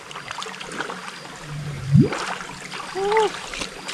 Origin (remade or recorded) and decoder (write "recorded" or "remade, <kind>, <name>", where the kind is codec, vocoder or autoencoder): recorded